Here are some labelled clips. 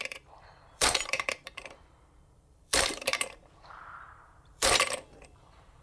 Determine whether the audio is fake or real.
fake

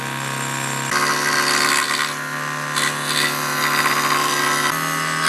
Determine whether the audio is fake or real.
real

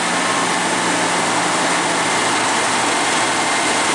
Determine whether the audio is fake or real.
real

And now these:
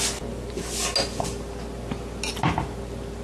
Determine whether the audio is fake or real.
real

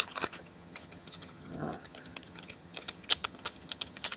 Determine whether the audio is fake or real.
fake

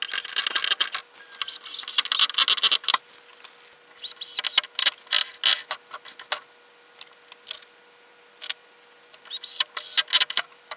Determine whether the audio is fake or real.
real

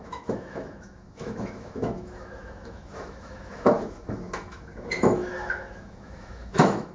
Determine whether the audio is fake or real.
fake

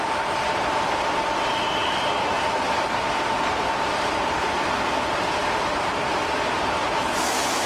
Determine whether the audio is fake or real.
fake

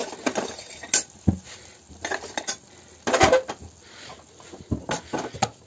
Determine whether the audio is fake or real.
real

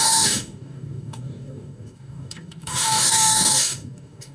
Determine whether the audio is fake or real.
fake